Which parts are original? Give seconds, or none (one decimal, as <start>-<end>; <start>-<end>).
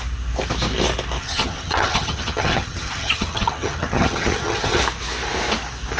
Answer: 0.0-1.2; 4.8-6.0